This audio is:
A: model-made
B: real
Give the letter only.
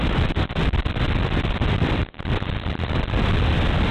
B